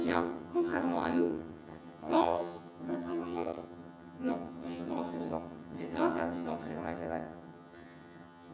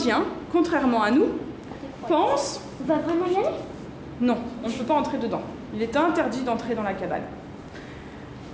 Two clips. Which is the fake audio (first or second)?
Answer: first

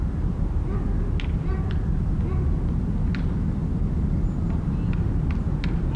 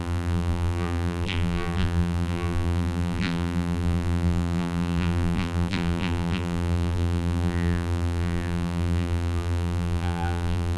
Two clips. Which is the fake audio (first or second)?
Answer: second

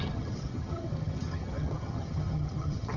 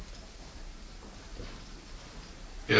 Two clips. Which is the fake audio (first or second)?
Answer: first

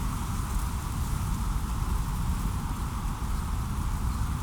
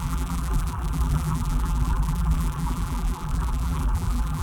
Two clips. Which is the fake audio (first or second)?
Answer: second